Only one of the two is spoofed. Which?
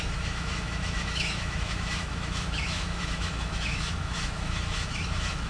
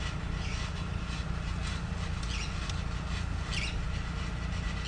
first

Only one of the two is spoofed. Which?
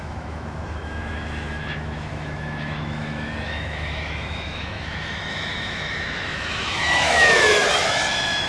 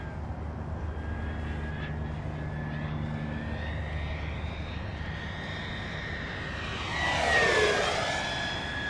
first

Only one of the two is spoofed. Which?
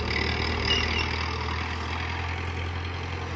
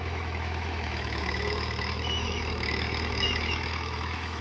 second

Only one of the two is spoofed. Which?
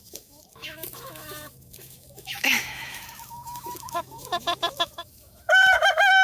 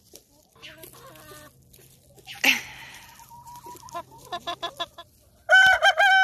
first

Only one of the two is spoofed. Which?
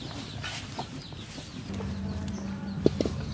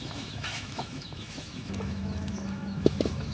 second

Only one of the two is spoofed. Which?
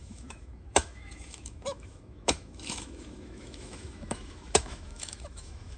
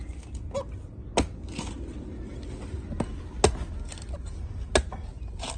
first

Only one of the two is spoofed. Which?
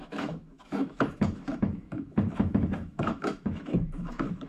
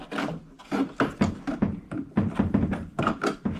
first